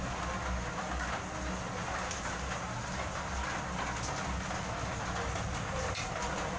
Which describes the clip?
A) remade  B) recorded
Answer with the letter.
B